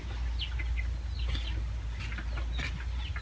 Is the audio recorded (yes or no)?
yes